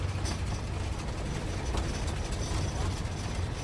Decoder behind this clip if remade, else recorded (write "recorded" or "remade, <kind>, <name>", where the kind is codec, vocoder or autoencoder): recorded